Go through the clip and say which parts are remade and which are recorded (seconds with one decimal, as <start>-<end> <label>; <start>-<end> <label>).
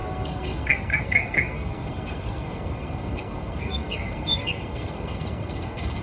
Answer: 0.0-6.0 remade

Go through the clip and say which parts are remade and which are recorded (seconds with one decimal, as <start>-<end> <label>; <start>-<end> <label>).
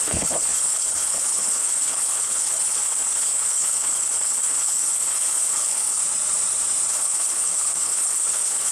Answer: 0.0-6.0 remade; 6.0-6.9 recorded; 6.9-8.7 remade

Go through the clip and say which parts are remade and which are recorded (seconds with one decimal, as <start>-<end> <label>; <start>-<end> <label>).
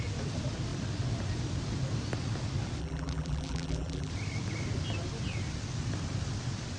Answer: 0.0-2.8 recorded; 2.8-4.1 remade; 4.1-6.8 recorded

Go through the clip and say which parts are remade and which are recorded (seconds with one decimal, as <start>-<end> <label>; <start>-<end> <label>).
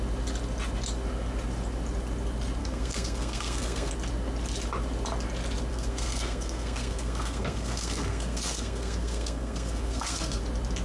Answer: 0.0-2.6 recorded; 2.6-3.9 remade; 3.9-5.7 recorded; 5.7-10.4 remade; 10.4-10.8 recorded